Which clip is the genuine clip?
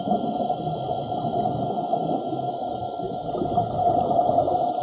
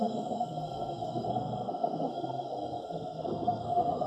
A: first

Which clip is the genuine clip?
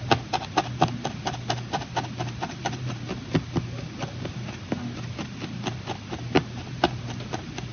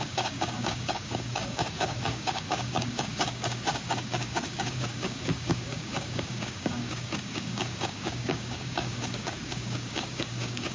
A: first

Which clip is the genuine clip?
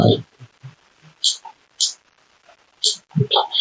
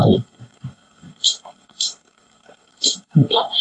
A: first